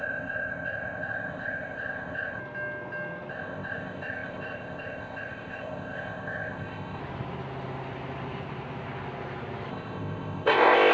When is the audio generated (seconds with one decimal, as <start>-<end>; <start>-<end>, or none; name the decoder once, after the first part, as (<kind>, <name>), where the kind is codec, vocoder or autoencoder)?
0.0-2.4 (codec, ZipCodec); 3.3-7.0; 9.7-10.9